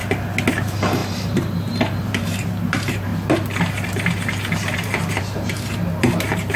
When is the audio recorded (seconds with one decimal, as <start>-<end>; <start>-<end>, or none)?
0.0-0.5